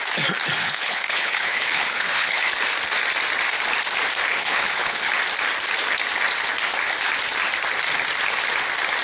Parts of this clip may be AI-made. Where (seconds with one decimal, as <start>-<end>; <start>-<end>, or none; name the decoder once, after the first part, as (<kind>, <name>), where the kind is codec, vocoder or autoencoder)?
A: 0.6-2.5 (codec, HILCodec); 4.3-5.1